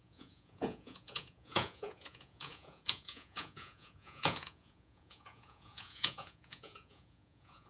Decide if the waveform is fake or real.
fake